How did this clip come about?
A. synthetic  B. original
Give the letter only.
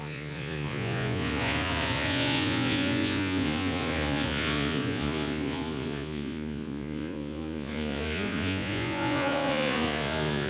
A